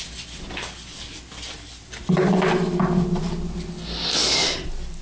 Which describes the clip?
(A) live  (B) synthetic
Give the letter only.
A